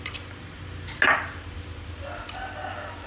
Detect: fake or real real